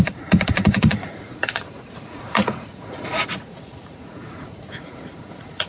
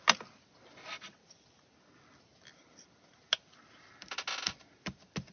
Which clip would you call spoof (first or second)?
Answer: first